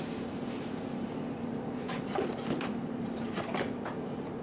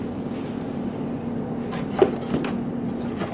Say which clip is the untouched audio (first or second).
second